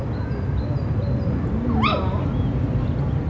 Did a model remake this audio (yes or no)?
no